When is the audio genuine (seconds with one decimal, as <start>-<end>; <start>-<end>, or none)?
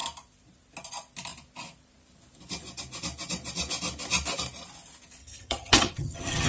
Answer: 0.0-5.2